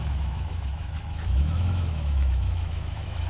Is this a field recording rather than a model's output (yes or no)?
no